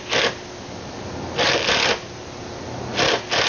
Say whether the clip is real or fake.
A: real